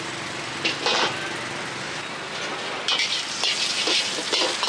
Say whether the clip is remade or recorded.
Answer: recorded